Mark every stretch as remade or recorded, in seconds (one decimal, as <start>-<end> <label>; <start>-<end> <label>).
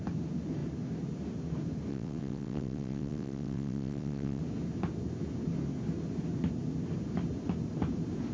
0.0-1.9 recorded; 1.9-4.4 remade; 4.4-8.3 recorded